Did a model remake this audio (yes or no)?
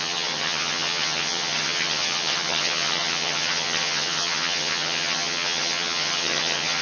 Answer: yes